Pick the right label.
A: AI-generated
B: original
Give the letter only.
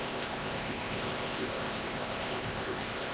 A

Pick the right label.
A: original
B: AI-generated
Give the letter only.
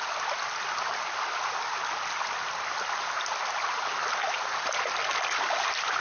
A